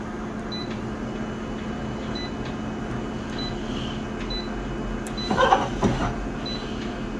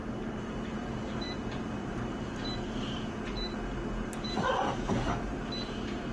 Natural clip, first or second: first